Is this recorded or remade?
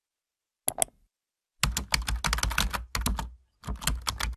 recorded